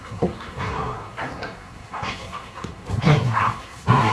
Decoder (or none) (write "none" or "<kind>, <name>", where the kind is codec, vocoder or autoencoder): codec, SNAC